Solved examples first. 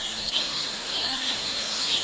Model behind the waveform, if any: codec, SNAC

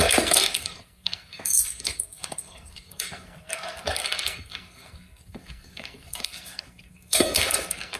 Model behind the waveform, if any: codec, SNAC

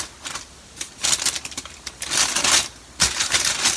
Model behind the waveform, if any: none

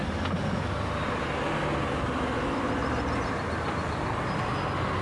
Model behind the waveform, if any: none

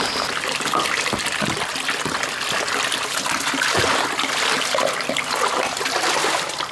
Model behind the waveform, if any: none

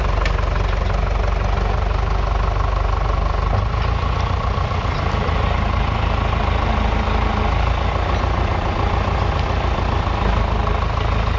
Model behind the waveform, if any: none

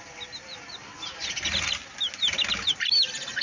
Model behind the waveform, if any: none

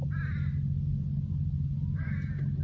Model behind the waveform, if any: none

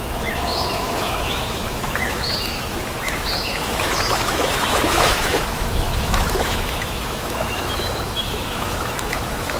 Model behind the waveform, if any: autoencoder, DAC-VAE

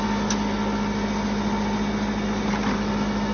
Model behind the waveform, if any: none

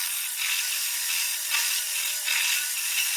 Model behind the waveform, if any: none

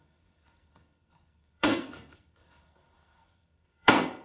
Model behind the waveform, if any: codec, SNAC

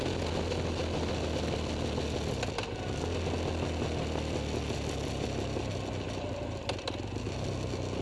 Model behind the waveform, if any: none